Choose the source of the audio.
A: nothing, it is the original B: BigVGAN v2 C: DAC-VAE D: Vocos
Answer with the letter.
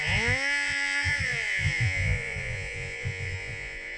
D